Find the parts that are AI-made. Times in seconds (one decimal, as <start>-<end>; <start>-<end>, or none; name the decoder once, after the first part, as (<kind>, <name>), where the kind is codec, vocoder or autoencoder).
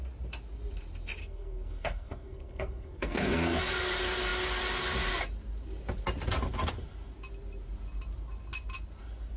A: 1.2-3.6 (codec, SNAC)